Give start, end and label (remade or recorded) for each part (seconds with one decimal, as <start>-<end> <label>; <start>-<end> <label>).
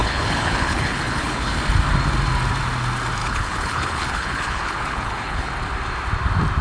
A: 0.0-1.6 remade; 1.6-3.2 recorded; 3.2-5.5 remade; 5.5-6.6 recorded